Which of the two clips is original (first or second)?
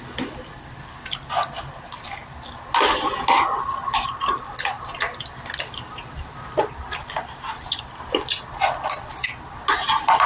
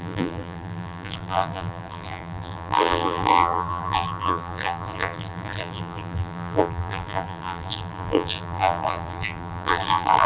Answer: first